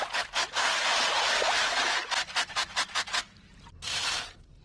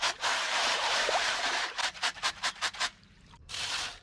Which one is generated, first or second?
second